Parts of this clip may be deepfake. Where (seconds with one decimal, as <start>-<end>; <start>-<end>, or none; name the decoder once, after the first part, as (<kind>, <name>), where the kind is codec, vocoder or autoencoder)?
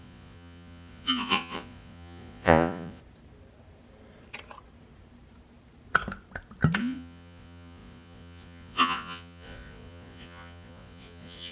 0.0-3.0 (vocoder, Vocos); 6.8-11.5